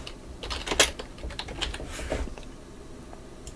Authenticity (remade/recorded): recorded